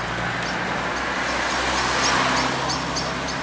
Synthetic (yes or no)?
no